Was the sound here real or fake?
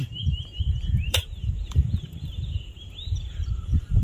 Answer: fake